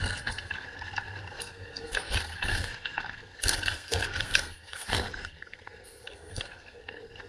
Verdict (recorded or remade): remade